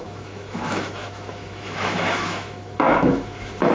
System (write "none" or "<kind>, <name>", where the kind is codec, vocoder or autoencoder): autoencoder, DAC-VAE